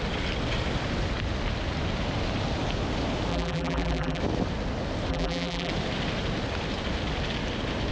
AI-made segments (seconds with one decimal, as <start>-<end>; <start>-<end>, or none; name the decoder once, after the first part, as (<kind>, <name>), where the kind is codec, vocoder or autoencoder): 3.3-4.2 (vocoder, BigVGAN v2); 5.1-5.7